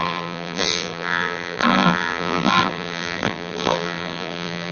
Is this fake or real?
fake